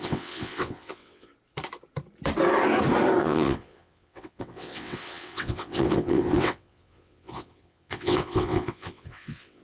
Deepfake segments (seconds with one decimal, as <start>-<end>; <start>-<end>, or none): 0.0-1.3; 3.2-9.6